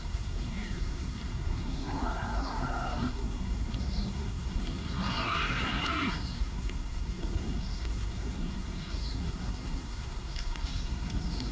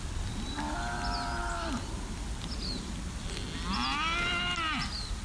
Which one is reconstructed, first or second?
first